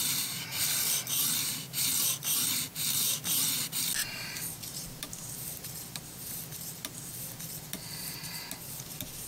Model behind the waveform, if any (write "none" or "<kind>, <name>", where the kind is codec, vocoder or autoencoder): vocoder, BigVGAN v2